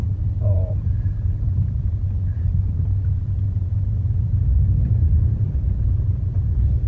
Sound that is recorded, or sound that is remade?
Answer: remade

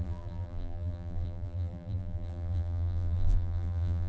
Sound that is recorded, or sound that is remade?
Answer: remade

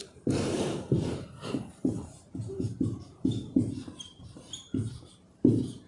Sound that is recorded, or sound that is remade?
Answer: remade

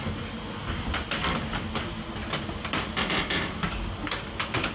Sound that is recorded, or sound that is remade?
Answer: recorded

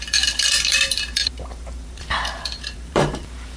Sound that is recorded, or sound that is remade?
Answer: remade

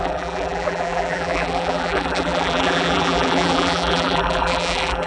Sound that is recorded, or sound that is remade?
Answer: remade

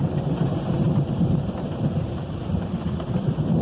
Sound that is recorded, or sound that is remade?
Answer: remade